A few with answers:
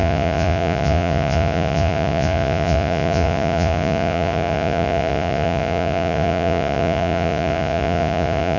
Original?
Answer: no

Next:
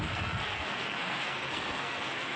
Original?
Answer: no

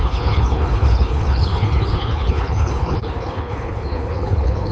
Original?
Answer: no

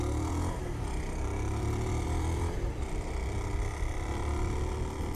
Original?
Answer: no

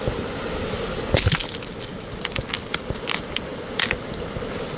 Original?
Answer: yes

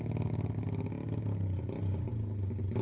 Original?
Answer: yes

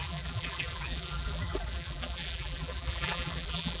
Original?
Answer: no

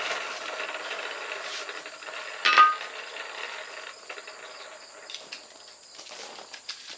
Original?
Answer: yes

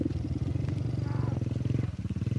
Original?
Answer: yes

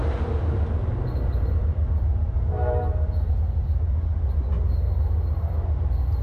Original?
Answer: yes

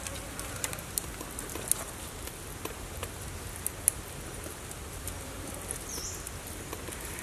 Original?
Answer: yes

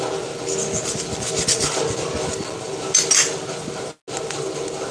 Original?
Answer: yes